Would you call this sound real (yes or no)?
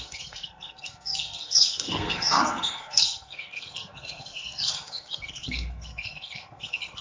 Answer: no